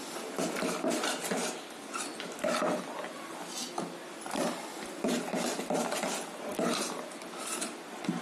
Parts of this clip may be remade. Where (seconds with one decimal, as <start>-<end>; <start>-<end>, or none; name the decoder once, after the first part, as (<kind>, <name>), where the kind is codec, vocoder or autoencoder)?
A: none